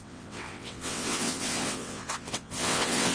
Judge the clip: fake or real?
fake